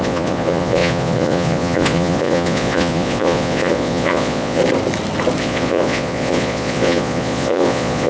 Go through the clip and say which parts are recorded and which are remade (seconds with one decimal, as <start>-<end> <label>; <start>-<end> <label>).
0.0-4.6 remade; 4.6-5.4 recorded; 5.4-8.1 remade